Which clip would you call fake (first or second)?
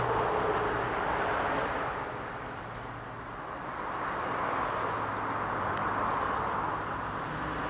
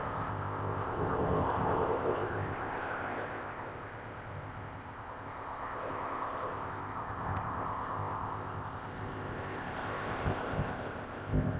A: second